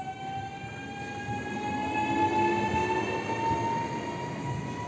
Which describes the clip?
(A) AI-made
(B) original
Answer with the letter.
B